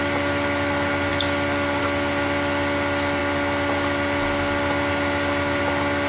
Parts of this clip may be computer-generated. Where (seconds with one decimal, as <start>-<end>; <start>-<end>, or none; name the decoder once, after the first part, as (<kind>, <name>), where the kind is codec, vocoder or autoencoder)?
none